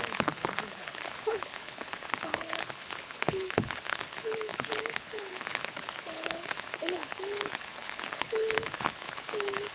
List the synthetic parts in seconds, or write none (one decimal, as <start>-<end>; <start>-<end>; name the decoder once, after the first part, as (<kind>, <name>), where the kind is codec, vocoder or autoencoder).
0.0-9.7 (codec, HILCodec)